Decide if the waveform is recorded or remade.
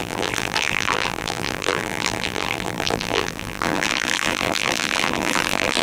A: remade